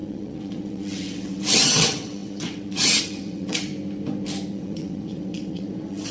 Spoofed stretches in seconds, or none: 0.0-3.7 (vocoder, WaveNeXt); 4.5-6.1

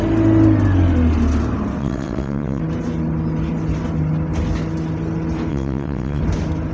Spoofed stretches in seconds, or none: 1.8-2.6 (vocoder, WaveNeXt); 5.5-6.2

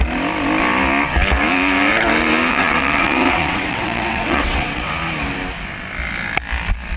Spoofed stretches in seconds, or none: 2.5-4.9 (vocoder, WaveNeXt)